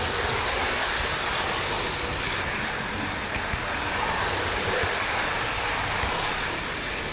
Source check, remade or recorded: recorded